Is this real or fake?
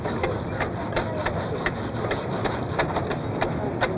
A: real